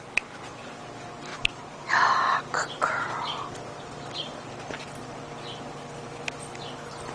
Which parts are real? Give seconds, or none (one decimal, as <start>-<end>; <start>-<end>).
0.0-1.3; 4.5-7.1